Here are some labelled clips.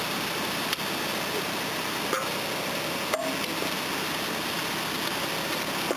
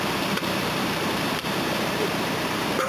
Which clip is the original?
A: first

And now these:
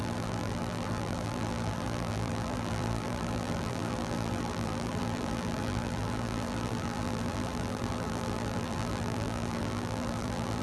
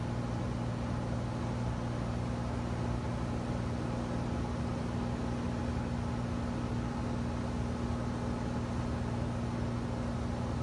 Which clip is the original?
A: second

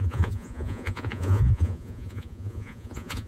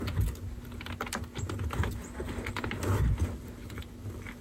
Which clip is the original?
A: second